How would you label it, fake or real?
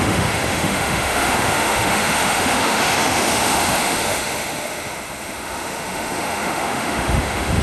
fake